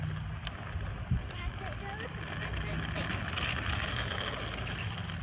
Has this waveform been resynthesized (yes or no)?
no